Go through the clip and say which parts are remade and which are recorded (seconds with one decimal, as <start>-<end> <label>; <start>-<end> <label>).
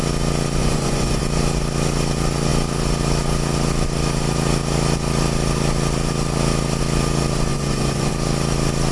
0.0-0.6 recorded; 0.6-1.2 remade; 1.2-7.5 recorded; 7.5-8.1 remade; 8.1-8.9 recorded